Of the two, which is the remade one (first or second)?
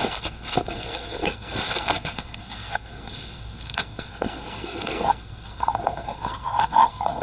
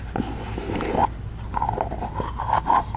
first